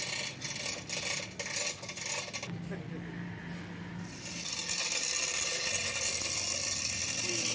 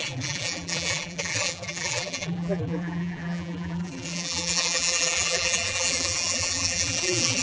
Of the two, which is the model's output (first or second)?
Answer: second